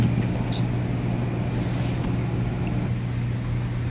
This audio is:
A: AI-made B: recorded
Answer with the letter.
A